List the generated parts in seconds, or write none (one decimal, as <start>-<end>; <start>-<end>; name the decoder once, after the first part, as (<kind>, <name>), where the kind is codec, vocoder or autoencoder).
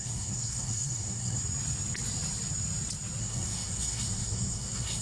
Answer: 0.0-1.4 (codec, SNAC); 3.2-5.0